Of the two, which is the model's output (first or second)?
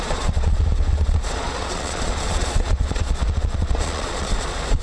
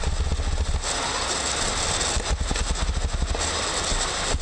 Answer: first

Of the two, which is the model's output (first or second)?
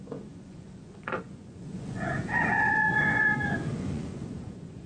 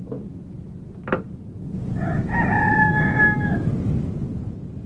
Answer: first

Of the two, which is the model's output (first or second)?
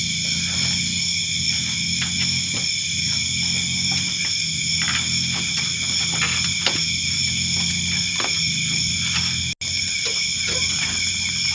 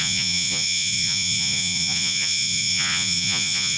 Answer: second